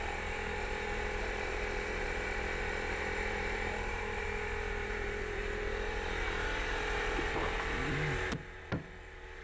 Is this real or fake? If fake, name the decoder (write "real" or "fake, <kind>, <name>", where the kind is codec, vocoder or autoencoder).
fake, vocoder, BigVGAN v2